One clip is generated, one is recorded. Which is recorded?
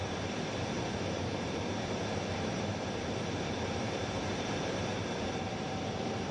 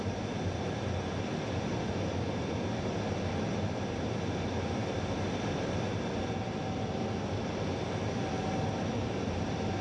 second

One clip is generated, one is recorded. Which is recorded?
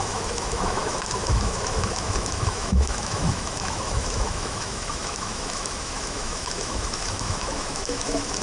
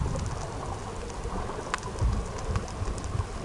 second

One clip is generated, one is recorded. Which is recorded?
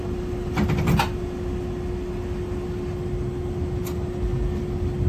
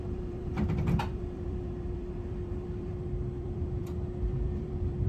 first